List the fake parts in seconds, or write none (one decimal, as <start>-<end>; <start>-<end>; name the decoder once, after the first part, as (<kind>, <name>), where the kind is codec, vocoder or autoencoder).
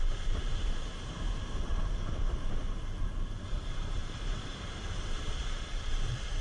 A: 0.0-1.7 (vocoder, BigVGAN v2); 2.3-6.4